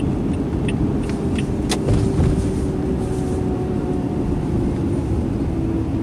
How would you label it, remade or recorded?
recorded